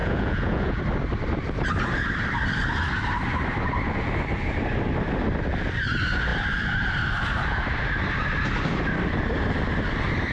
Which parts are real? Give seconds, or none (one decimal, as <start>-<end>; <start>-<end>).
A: 0.8-10.3